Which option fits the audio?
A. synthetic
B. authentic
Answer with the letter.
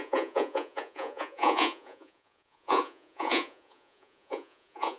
A